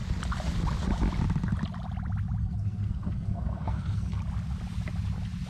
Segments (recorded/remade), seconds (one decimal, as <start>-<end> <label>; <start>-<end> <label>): 0.0-2.4 recorded; 2.4-4.2 remade; 4.2-5.5 recorded